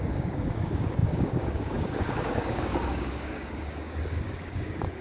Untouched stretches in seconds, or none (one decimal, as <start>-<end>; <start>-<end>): none